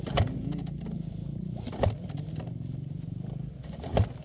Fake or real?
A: real